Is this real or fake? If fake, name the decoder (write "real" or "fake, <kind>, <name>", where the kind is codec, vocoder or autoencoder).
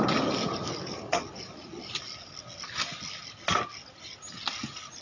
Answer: real